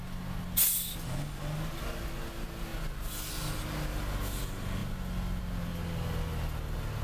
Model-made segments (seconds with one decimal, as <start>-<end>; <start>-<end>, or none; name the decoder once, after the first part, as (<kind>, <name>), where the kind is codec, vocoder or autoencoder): none